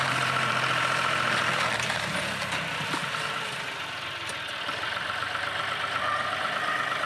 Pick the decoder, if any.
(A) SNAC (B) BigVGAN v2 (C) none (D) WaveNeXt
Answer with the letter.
B